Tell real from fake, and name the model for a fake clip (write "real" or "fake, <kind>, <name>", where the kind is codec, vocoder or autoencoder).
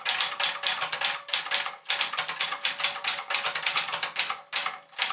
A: real